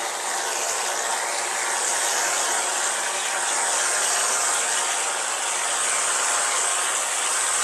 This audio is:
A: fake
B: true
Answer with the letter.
B